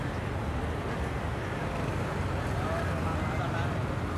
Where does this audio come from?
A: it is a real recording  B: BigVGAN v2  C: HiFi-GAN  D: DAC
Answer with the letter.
A